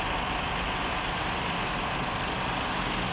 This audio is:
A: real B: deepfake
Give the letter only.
A